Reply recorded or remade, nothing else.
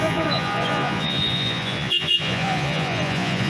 remade